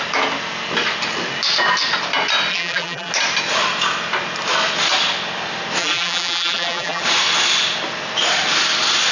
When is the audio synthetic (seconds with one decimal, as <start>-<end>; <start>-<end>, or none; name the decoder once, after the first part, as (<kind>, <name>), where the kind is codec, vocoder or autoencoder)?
2.5-3.1 (vocoder, BigVGAN v2); 5.8-7.0